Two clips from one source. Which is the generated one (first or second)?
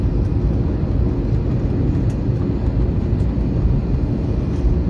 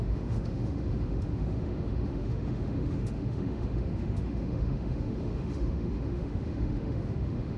second